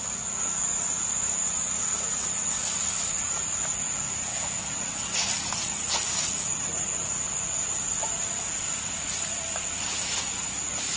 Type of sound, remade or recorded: remade